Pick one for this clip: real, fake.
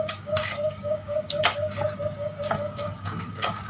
fake